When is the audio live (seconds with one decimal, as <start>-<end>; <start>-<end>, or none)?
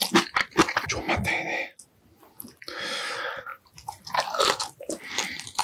0.0-5.6